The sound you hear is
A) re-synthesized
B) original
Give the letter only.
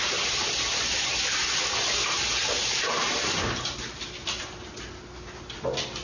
B